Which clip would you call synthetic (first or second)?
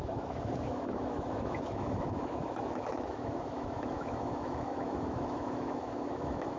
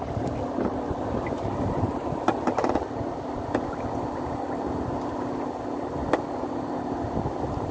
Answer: first